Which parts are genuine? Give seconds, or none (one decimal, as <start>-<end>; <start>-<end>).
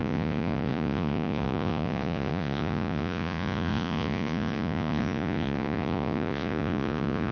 none